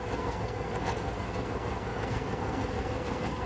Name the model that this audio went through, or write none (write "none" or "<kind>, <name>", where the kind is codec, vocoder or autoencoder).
codec, SNAC